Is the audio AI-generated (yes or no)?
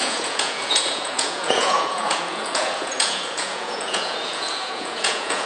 yes